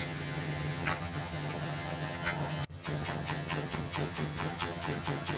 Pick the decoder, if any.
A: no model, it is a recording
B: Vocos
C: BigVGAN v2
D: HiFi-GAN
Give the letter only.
D